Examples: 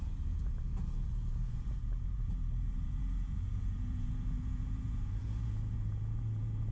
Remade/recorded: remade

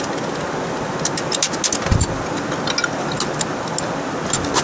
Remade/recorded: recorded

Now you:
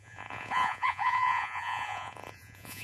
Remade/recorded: remade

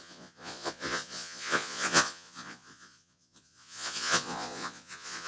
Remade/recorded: remade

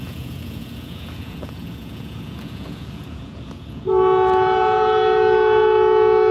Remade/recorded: remade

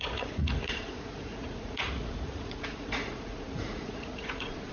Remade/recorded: remade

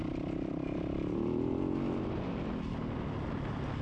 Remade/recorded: recorded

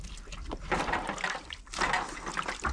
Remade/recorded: recorded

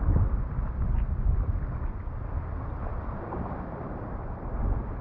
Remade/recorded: recorded